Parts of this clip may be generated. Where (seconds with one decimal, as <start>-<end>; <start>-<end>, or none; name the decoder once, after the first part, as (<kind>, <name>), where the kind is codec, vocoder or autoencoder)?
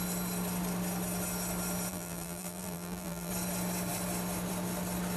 1.9-3.3 (vocoder, BigVGAN v2)